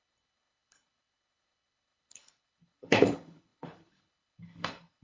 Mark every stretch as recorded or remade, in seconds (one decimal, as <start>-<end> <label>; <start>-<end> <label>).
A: 0.0-5.0 remade